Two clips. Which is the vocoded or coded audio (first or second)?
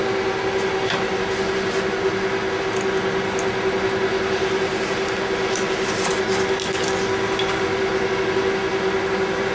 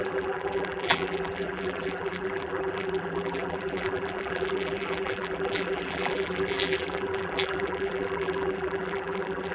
second